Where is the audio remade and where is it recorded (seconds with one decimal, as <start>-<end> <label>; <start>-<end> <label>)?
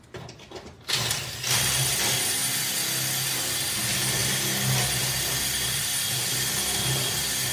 0.0-7.5 recorded